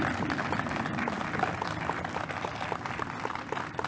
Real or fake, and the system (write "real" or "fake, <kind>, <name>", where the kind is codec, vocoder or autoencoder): real